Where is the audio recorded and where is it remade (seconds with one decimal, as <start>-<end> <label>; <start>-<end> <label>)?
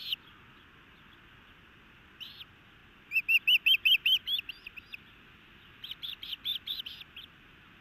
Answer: 0.0-7.8 recorded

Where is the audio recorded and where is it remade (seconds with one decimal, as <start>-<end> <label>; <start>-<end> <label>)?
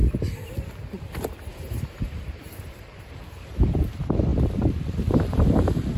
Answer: 0.0-1.5 recorded; 1.5-4.3 remade; 4.3-5.1 recorded; 5.1-6.0 remade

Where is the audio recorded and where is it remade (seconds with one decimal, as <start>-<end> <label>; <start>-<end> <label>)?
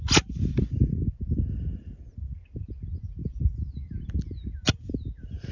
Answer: 0.0-1.7 recorded; 1.7-2.4 remade; 2.4-3.2 recorded; 3.2-3.9 remade; 3.9-5.5 recorded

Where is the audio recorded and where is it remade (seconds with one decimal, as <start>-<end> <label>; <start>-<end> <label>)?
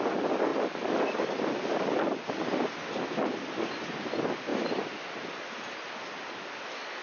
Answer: 0.0-0.5 recorded; 0.5-3.6 remade; 3.6-7.0 recorded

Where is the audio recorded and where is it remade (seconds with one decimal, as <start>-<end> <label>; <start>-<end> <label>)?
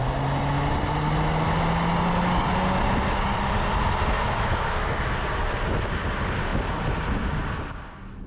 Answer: 0.0-8.3 recorded